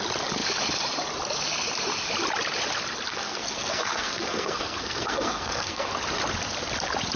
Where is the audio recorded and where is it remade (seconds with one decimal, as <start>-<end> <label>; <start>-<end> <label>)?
0.0-3.1 recorded; 3.1-5.9 remade; 5.9-7.2 recorded